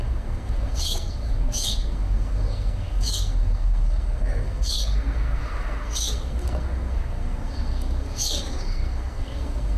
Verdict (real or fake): fake